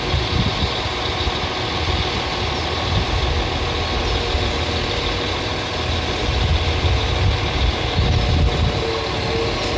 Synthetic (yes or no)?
no